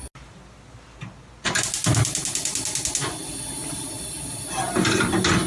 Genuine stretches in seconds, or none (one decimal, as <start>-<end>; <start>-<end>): 0.0-3.6